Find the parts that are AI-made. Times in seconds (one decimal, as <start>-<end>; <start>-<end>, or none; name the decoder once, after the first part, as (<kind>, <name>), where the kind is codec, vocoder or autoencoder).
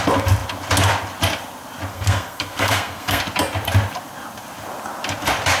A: 1.9-3.2 (codec, SNAC)